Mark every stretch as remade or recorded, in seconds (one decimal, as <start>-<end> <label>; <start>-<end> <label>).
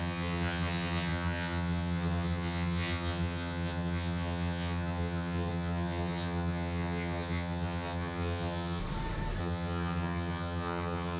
0.0-8.8 remade; 8.8-9.4 recorded; 9.4-11.2 remade